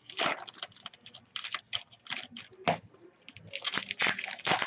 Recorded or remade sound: recorded